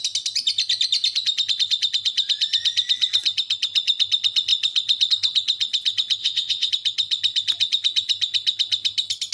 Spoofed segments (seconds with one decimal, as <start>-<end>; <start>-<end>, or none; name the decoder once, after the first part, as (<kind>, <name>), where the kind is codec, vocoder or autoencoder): 6.2-6.7 (vocoder, WaveNeXt)